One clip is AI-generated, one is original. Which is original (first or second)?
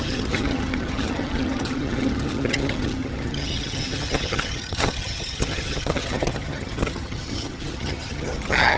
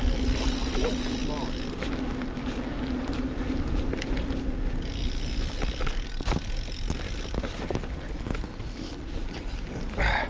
second